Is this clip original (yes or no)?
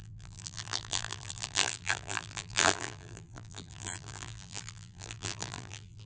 no